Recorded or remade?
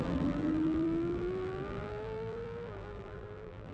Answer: remade